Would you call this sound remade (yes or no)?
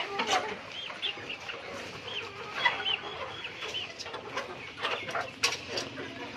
no